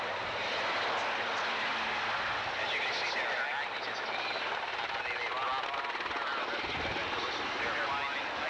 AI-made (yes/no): no